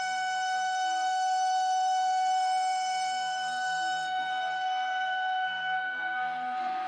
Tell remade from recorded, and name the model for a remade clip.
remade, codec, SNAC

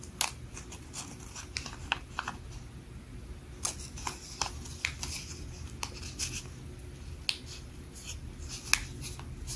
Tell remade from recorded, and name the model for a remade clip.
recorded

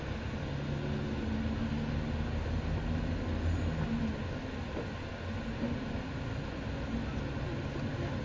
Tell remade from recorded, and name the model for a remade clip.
recorded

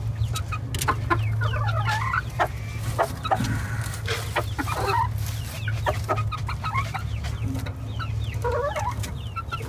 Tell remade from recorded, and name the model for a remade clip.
recorded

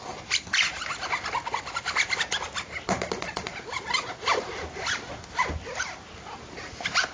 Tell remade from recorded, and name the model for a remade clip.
recorded